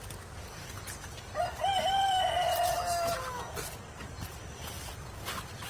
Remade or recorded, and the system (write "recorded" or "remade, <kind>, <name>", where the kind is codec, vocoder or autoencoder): recorded